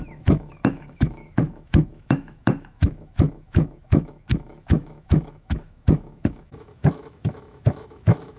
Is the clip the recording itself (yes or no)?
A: no